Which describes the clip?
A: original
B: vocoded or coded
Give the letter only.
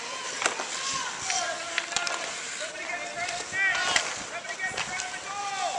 A